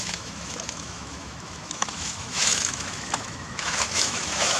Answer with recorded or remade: remade